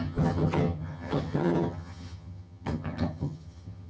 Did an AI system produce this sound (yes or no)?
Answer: yes